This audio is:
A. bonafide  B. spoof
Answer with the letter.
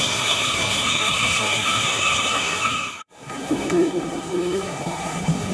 B